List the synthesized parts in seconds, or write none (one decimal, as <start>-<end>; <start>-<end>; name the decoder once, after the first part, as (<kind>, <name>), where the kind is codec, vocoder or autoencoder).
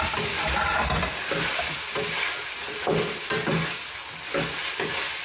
none